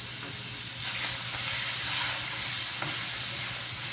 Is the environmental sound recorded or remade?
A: recorded